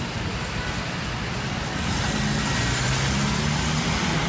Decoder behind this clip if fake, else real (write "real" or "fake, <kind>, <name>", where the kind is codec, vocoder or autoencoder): real